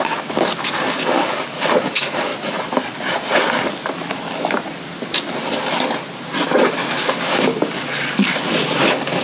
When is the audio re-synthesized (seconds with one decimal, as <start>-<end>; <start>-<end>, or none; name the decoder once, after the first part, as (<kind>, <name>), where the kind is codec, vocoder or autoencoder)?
0.0-2.3 (codec, DAC); 7.0-9.2